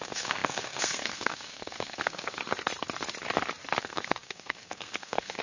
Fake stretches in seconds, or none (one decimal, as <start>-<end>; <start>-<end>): 0.0-2.4; 3.8-5.4